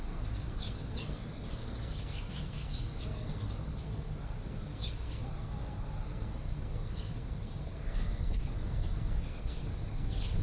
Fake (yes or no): yes